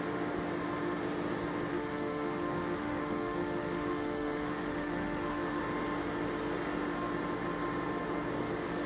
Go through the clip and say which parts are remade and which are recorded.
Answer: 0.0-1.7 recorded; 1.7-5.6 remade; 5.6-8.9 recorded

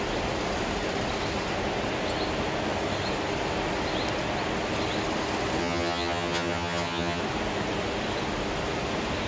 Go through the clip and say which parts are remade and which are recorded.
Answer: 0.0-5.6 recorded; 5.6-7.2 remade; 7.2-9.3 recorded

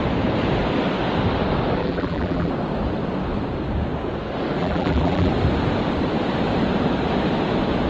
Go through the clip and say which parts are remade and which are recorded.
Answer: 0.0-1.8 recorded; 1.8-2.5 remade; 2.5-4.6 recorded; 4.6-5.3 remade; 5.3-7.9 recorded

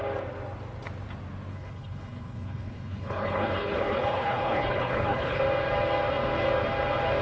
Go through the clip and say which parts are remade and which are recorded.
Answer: 0.0-1.5 recorded; 1.5-5.4 remade; 5.4-7.2 recorded

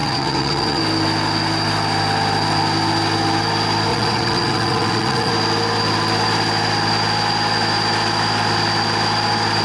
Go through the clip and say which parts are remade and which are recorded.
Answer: 0.0-0.8 remade; 0.8-3.9 recorded; 3.9-5.3 remade; 5.3-9.6 recorded